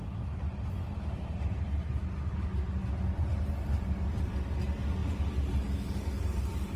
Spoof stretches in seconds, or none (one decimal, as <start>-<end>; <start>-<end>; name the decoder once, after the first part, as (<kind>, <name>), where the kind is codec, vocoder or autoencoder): none